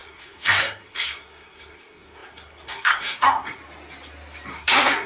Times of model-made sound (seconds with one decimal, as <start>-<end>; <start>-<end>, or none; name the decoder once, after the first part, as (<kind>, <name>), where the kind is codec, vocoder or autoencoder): 0.0-3.6 (codec, SNAC); 4.5-5.1